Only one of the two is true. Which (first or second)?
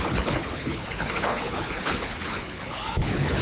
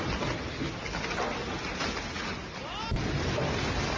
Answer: second